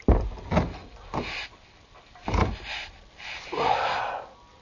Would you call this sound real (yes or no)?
yes